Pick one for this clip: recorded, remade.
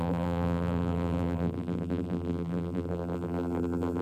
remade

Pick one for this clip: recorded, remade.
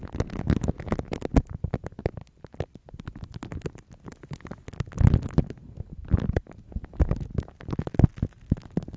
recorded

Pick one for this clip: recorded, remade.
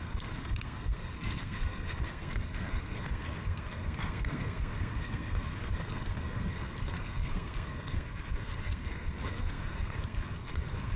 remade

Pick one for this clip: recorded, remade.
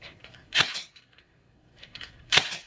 remade